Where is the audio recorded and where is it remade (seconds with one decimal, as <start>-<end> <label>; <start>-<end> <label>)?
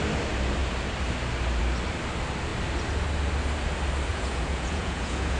0.0-4.1 recorded; 4.1-5.4 remade